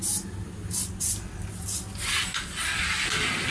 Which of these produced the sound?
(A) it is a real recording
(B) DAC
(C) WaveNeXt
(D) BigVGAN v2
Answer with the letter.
A